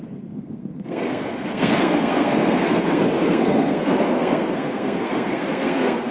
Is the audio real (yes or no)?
no